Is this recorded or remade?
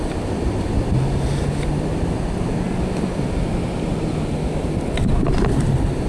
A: recorded